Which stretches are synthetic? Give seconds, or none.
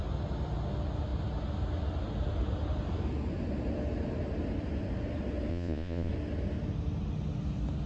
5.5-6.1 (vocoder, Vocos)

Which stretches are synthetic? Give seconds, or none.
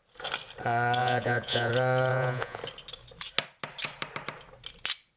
1.0-1.7 (vocoder, Vocos); 2.1-2.6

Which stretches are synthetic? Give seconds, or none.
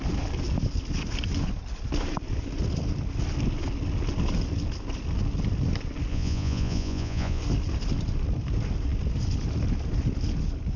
6.1-7.4 (vocoder, Vocos)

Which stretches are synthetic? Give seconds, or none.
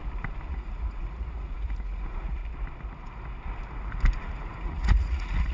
0.5-2.4 (vocoder, Vocos); 4.2-5.5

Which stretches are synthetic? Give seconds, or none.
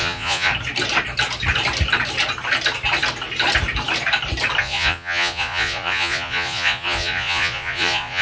0.0-0.5 (vocoder, Vocos); 4.6-8.2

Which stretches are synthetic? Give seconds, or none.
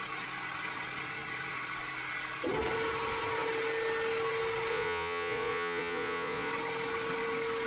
4.7-6.5 (vocoder, Vocos)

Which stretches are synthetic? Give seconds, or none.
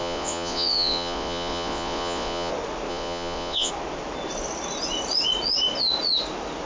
0.0-2.5 (vocoder, Vocos); 2.9-3.7